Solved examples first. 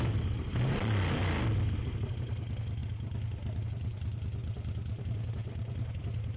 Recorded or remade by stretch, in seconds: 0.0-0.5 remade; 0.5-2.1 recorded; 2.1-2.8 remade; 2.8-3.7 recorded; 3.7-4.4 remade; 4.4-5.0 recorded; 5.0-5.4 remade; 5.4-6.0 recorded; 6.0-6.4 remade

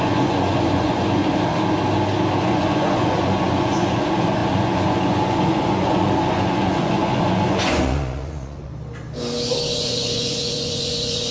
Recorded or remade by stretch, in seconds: 0.0-1.2 remade; 1.2-2.4 recorded; 2.4-8.7 remade; 8.7-9.7 recorded; 9.7-11.3 remade

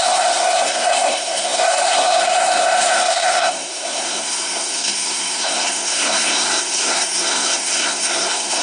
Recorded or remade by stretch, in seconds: 0.0-8.6 remade